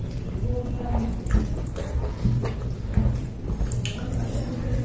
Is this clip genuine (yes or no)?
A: yes